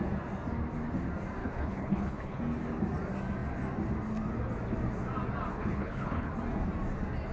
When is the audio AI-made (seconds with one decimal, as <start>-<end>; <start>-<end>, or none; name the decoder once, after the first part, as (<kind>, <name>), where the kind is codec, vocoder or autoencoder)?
1.4-2.4 (codec, HILCodec); 5.5-6.3